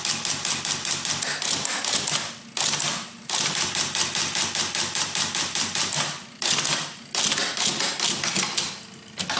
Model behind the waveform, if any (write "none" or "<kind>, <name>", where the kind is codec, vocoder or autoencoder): none